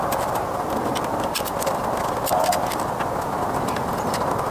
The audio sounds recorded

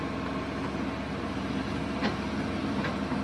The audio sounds recorded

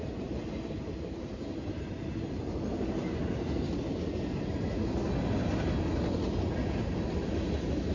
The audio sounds recorded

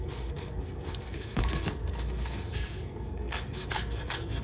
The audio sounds remade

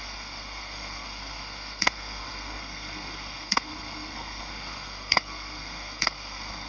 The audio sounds remade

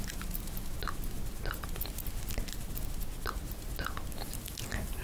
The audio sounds recorded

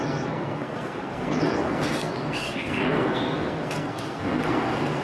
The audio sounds remade